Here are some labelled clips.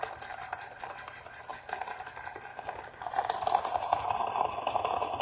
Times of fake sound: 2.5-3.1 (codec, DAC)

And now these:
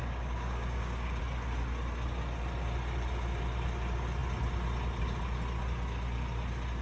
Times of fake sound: 0.0-1.2 (codec, DAC)

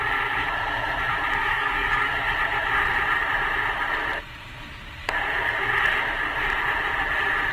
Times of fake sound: 1.4-2.1 (codec, DAC)

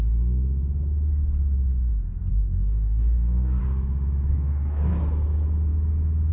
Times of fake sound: 2.3-3.6 (codec, DAC); 4.3-4.9

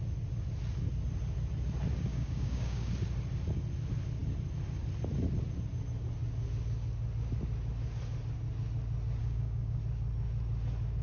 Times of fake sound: 2.1-2.9 (codec, DAC); 9.2-9.8

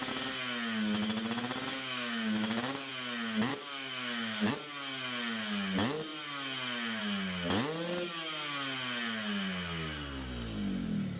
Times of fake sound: 1.7-2.9 (codec, DAC); 3.5-4.5